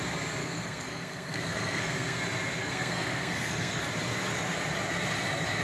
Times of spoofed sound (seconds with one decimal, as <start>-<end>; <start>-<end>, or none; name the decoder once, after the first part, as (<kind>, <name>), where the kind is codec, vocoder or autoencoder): 0.4-2.2 (codec, SNAC); 2.6-3.8